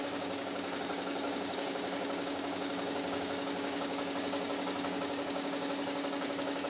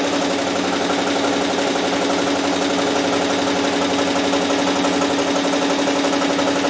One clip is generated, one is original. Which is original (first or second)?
second